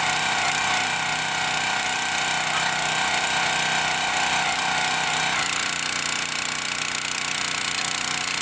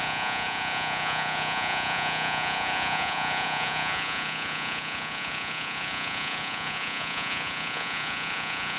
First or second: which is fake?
second